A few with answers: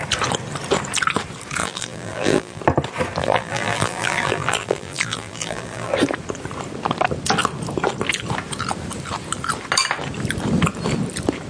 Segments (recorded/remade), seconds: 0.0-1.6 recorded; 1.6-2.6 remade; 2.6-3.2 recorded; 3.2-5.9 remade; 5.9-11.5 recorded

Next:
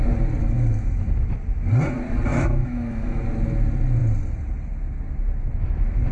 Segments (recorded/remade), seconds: 0.0-0.4 recorded; 0.4-1.3 remade; 1.3-2.3 recorded; 2.3-3.2 remade; 3.2-6.1 recorded

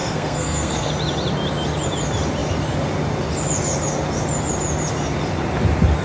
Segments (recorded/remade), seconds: 0.0-0.9 remade; 0.9-6.0 recorded